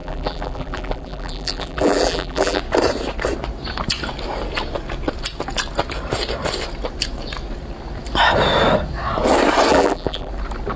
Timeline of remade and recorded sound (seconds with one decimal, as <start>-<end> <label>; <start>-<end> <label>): 0.0-2.6 remade; 2.6-9.7 recorded; 9.7-10.3 remade; 10.3-10.8 recorded